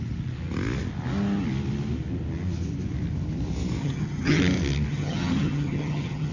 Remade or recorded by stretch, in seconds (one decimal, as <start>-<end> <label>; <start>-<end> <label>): 0.0-3.8 recorded; 3.8-4.4 remade; 4.4-4.9 recorded; 4.9-6.3 remade